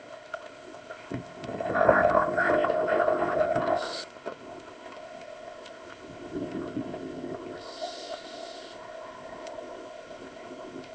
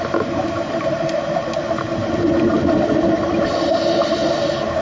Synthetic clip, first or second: first